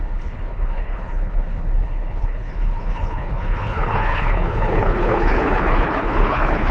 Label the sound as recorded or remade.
remade